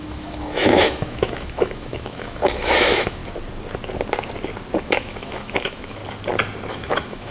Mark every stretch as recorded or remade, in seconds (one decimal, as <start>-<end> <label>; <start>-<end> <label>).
0.0-3.2 remade; 3.2-4.8 recorded; 4.8-6.0 remade; 6.0-6.7 recorded; 6.7-7.3 remade